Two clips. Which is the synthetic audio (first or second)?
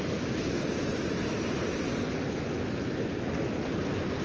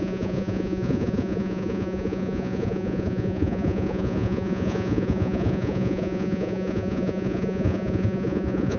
second